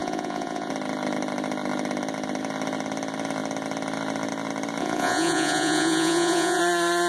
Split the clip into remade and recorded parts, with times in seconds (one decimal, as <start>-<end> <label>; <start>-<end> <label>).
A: 0.0-0.7 remade; 0.7-4.8 recorded; 4.8-6.6 remade; 6.6-7.1 recorded